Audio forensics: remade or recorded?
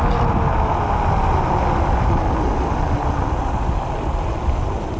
recorded